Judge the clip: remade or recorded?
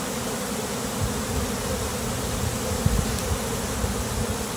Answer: recorded